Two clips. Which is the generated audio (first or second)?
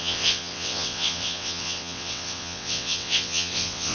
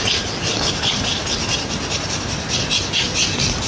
first